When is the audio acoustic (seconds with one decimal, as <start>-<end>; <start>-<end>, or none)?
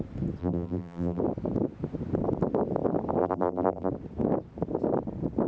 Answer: 0.0-0.4; 1.2-3.2; 3.9-5.5